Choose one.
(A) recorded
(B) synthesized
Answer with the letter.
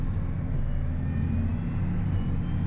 A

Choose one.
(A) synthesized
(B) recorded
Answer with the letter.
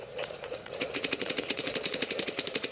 A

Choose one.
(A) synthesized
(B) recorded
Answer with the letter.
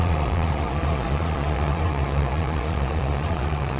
A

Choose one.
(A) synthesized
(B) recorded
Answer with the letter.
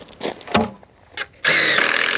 B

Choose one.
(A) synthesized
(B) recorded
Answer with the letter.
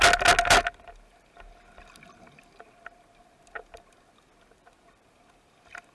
B